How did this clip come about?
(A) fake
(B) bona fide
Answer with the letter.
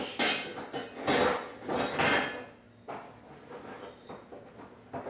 B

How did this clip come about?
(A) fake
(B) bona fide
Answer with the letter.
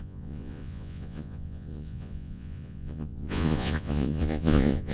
A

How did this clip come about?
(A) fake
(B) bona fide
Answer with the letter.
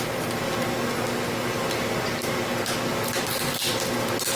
B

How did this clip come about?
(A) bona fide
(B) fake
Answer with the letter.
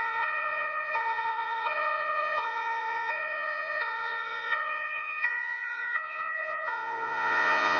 B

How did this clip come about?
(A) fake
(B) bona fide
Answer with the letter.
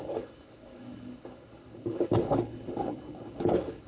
A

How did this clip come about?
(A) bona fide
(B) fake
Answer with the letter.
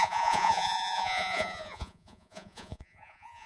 B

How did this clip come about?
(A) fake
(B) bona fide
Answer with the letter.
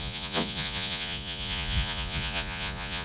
A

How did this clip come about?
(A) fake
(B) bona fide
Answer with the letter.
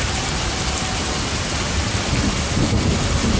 B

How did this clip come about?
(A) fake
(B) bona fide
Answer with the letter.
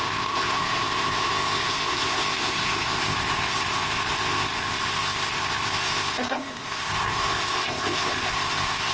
A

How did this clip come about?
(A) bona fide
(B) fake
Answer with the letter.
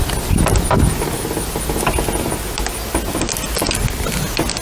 A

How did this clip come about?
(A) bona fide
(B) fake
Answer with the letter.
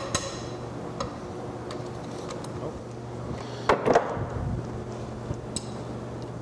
A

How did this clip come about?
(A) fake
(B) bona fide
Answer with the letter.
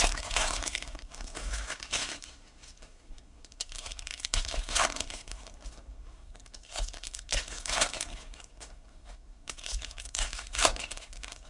A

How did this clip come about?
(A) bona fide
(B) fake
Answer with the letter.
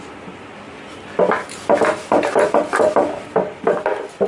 A